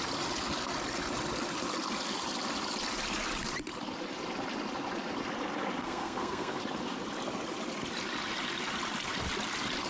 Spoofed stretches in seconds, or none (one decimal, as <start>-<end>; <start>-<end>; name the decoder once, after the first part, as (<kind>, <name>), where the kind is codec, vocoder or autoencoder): 5.8-6.6 (codec, SNAC)

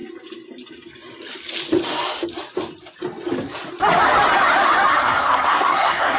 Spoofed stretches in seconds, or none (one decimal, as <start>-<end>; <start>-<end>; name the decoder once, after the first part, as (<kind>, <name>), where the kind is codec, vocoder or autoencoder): 4.9-6.2 (codec, SNAC)

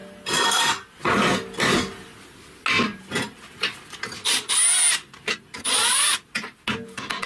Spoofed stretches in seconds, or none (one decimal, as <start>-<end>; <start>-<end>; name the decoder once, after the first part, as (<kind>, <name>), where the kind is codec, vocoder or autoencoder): none

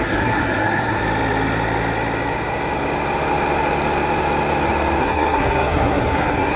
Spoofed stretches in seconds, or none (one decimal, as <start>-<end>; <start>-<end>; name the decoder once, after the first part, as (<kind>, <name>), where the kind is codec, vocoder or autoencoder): 0.0-1.0 (codec, SNAC); 5.0-6.6

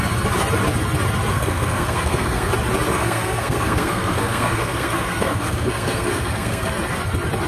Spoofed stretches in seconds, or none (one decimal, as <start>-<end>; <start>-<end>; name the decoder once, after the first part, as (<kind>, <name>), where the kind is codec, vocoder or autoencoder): 1.3-2.5 (codec, SNAC); 2.9-6.7

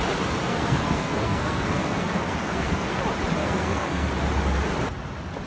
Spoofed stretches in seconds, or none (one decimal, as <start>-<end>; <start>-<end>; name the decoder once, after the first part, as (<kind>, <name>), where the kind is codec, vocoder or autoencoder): 0.4-3.0 (codec, SNAC); 3.4-4.1

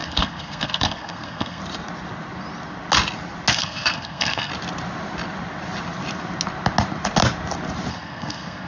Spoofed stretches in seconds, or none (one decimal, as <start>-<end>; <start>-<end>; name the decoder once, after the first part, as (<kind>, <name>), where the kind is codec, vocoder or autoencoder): 0.0-1.6 (codec, SNAC); 3.5-4.5; 7.9-8.7